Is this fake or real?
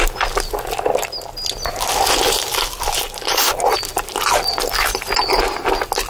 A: real